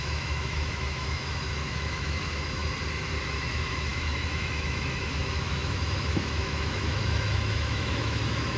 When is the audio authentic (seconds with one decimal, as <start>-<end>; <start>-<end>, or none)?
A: 2.6-3.2